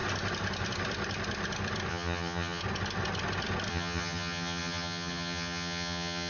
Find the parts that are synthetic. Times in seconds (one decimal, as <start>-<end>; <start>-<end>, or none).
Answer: 1.9-2.6; 3.7-6.3